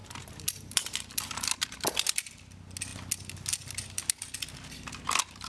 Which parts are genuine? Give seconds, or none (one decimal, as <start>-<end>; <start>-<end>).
1.2-5.5